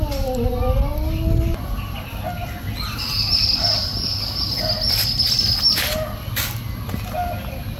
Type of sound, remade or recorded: recorded